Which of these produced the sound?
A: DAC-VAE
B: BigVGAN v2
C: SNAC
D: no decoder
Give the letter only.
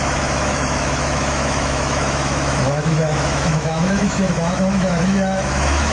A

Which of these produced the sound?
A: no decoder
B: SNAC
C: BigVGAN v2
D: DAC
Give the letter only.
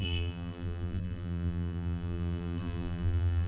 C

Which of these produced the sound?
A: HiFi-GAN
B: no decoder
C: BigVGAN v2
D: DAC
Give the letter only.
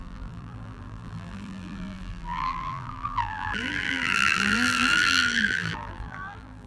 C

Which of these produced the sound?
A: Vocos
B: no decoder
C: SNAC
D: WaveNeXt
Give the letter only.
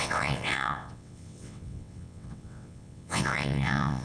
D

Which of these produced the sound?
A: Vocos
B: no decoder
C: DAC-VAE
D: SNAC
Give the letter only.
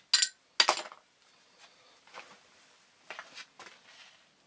B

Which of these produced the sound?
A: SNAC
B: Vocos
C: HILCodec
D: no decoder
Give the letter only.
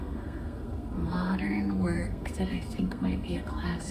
A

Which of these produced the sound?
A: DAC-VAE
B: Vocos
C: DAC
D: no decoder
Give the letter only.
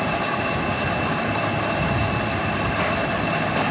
D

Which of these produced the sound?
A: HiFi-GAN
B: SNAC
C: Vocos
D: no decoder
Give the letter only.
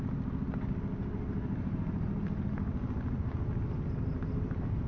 D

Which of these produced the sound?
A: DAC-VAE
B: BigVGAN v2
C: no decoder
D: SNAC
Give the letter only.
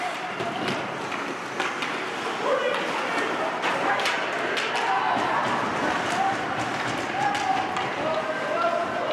B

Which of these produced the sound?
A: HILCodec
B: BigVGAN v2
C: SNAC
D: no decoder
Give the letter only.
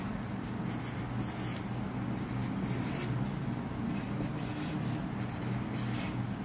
D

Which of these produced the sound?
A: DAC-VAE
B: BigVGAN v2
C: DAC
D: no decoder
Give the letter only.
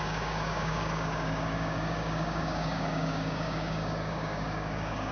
C